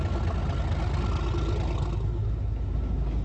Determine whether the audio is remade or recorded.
recorded